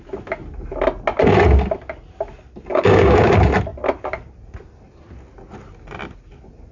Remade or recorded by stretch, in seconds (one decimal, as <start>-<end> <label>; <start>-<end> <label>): 0.0-2.7 recorded; 2.7-3.3 remade; 3.3-6.7 recorded